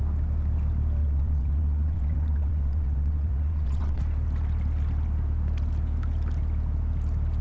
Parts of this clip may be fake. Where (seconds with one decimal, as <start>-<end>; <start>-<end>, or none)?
1.0-4.0